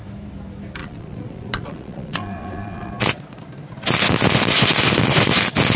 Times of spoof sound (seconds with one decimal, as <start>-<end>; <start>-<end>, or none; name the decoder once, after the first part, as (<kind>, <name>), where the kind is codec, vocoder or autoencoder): 0.8-2.9 (vocoder, Vocos)